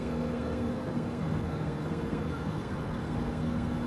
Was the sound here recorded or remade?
remade